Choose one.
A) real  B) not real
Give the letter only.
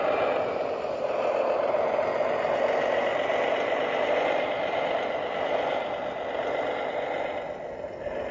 A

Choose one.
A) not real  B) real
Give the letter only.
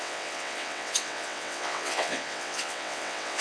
A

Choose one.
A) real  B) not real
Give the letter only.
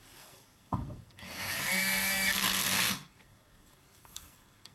B